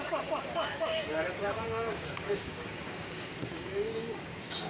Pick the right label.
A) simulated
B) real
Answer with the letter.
A